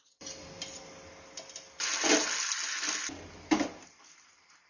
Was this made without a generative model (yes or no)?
yes